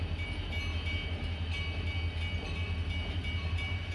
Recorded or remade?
recorded